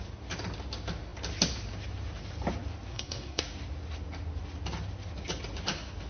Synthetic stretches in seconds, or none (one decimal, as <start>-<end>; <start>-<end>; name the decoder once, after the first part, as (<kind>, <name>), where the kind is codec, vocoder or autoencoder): 2.9-3.4 (codec, SNAC)